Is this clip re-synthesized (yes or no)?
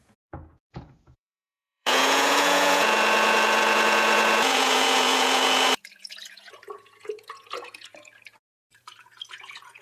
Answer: yes